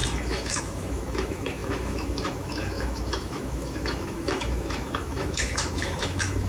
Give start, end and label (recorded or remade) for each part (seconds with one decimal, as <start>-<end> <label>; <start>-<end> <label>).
0.0-6.5 remade